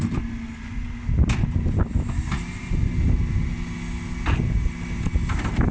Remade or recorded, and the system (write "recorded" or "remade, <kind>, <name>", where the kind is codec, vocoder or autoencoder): recorded